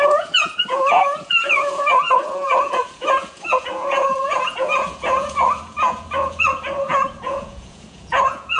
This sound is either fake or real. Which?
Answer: fake